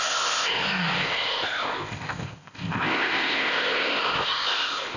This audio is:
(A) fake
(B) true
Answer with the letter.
A